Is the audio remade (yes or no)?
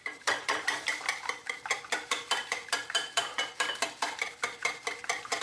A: yes